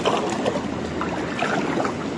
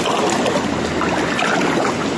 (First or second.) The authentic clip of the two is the second